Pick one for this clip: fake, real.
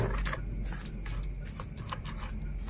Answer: real